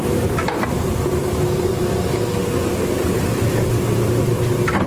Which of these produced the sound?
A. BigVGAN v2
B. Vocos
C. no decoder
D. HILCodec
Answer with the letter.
C